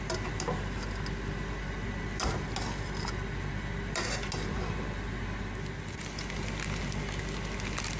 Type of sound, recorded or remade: recorded